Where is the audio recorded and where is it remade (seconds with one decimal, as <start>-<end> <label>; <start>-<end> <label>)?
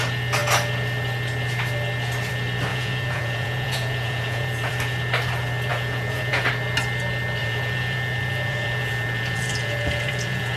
0.0-2.7 recorded; 2.7-4.7 remade; 4.7-5.7 recorded; 5.7-6.5 remade; 6.5-7.4 recorded; 7.4-10.6 remade